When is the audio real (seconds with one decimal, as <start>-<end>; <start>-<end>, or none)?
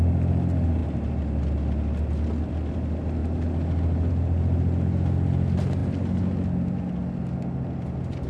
0.0-8.3